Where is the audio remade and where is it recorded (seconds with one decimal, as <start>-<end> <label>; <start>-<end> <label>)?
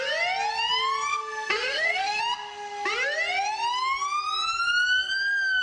0.0-1.1 recorded; 1.1-2.2 remade; 2.2-5.6 recorded